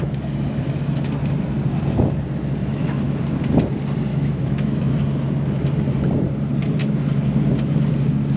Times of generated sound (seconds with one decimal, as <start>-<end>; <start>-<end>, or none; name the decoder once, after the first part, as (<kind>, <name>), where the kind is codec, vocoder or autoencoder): 2.6-3.2 (autoencoder, DAC-VAE); 4.1-4.9